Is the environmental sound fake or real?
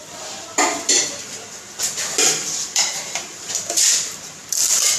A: fake